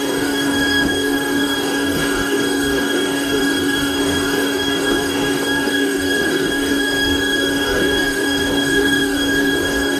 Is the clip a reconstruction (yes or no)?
yes